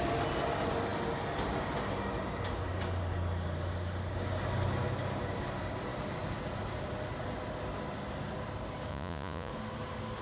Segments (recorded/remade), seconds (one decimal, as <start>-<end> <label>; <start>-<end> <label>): 0.0-8.9 recorded; 8.9-9.5 remade; 9.5-10.2 recorded